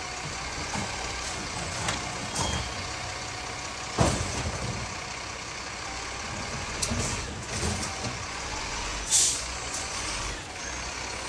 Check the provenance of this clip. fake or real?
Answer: fake